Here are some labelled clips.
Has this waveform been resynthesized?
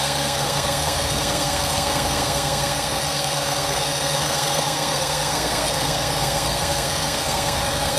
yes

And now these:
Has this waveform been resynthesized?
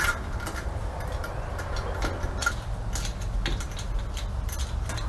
no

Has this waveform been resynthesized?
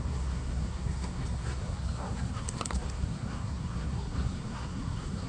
yes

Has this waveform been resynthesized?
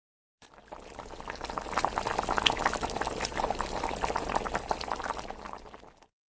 no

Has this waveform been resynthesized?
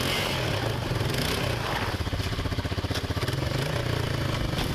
no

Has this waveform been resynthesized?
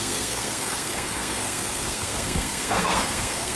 yes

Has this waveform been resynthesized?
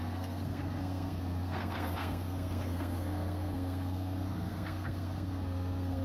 yes